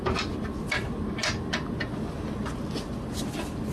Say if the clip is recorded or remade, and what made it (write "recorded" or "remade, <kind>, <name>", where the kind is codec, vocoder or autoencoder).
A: recorded